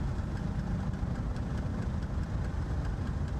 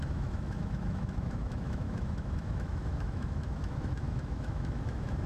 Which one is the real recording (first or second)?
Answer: first